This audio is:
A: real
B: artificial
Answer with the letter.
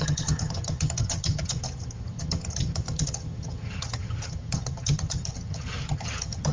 B